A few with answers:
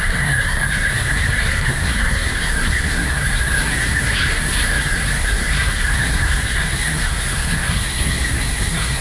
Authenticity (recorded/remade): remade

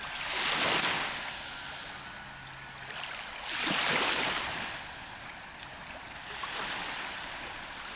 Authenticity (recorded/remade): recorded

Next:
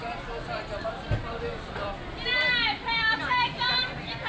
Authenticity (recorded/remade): remade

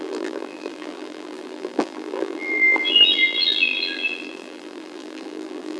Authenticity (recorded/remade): remade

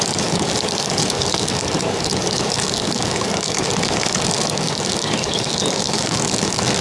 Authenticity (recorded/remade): remade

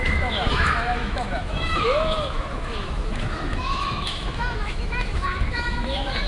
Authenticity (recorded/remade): remade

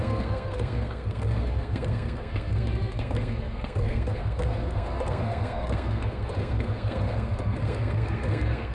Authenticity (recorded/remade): remade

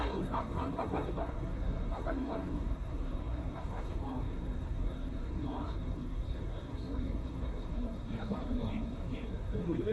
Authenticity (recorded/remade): remade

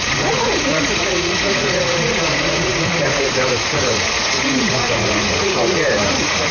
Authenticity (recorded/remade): remade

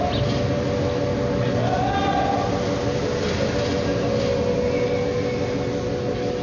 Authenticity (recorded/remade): recorded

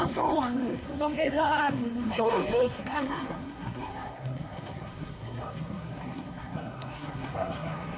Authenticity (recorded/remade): remade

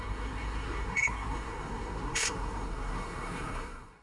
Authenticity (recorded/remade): remade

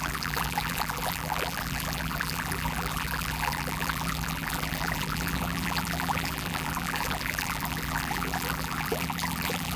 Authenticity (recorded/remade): remade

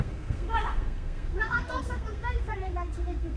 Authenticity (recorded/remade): remade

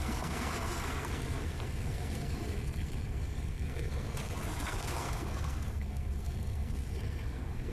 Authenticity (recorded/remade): remade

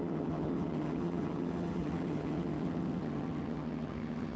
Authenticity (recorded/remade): remade